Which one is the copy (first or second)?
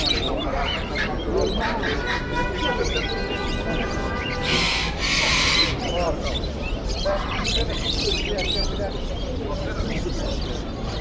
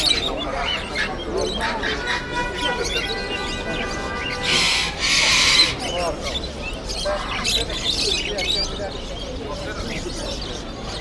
first